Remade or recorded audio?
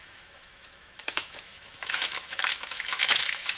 remade